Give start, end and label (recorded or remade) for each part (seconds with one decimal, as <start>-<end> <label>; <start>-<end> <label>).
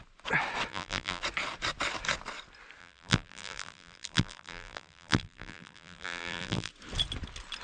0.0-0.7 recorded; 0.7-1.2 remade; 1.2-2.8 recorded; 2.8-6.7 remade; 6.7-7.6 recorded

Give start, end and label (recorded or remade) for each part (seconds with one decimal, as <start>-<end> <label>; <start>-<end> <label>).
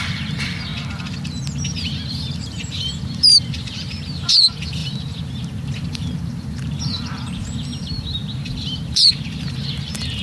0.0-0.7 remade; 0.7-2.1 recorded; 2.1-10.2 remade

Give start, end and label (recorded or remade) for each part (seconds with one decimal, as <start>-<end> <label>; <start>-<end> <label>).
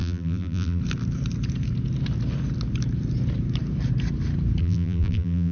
0.0-0.8 remade; 0.8-4.6 recorded; 4.6-5.5 remade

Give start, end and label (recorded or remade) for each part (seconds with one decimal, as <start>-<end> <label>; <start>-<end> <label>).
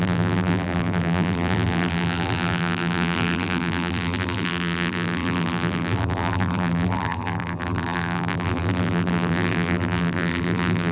0.0-10.9 remade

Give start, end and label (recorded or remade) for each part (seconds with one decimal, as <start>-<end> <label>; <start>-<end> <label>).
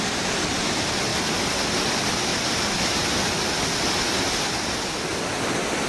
0.0-5.1 recorded; 5.1-5.9 remade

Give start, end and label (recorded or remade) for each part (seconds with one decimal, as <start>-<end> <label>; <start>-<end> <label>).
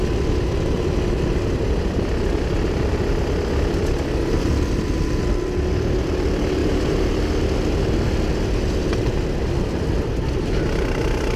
0.0-6.6 recorded; 6.6-7.3 remade; 7.3-11.4 recorded